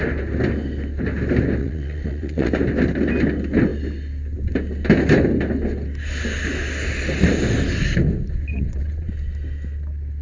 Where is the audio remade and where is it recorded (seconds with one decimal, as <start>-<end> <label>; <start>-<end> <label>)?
0.0-1.6 recorded; 1.6-2.5 remade; 2.5-8.5 recorded; 8.5-9.1 remade; 9.1-10.2 recorded

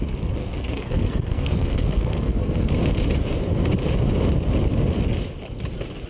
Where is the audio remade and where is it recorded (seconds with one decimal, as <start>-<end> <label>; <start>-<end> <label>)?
0.0-0.4 recorded; 0.4-2.7 remade; 2.7-6.1 recorded

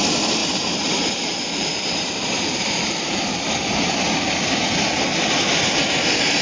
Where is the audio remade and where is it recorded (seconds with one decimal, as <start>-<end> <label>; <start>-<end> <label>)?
0.0-0.4 recorded; 0.4-4.0 remade; 4.0-6.4 recorded

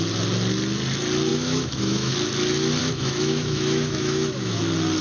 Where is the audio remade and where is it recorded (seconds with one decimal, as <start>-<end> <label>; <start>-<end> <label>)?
0.0-1.3 recorded; 1.3-2.1 remade; 2.1-2.8 recorded; 2.8-4.6 remade; 4.6-5.0 recorded